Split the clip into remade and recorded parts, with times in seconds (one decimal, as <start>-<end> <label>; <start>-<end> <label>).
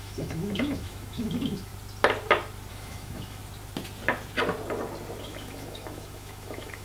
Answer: 0.0-1.7 remade; 1.7-2.7 recorded; 2.7-3.4 remade; 3.4-5.2 recorded; 5.2-6.8 remade